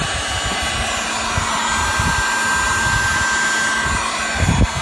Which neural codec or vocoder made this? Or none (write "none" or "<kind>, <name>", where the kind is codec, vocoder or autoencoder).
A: none